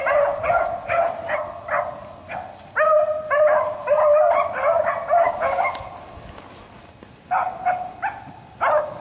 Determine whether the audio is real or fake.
real